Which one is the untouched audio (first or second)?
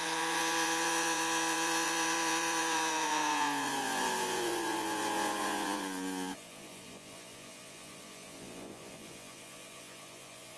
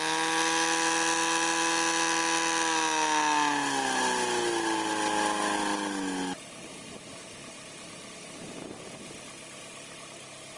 second